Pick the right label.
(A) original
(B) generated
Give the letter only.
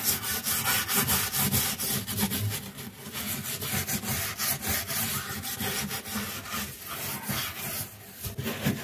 A